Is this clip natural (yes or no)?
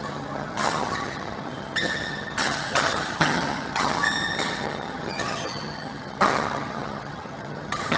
no